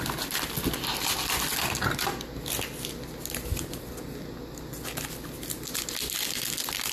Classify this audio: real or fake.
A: real